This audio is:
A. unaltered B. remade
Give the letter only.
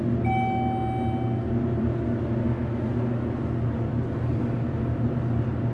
A